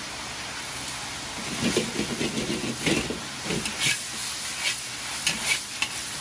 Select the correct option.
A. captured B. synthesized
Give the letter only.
A